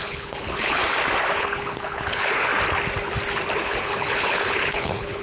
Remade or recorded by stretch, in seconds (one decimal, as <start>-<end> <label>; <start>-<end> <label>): 0.0-0.8 remade; 0.8-1.4 recorded; 1.4-2.5 remade; 2.5-3.6 recorded; 3.6-5.2 remade